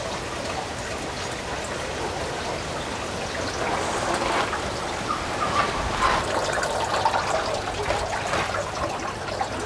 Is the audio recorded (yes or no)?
yes